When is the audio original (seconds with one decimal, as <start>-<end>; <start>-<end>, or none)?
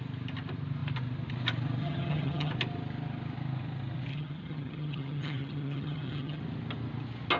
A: 0.0-1.8; 2.5-4.1; 6.4-7.4